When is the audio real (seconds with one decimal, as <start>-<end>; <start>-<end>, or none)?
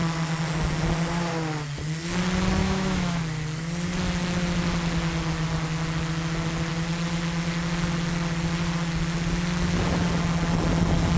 0.0-2.6; 3.2-11.2